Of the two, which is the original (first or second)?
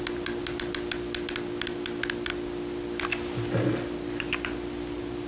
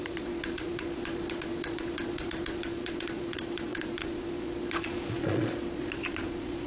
first